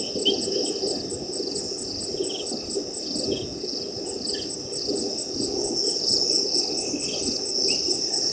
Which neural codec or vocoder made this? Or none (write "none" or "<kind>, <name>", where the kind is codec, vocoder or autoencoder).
none